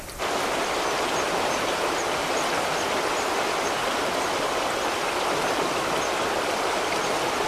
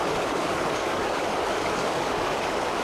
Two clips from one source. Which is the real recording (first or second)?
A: first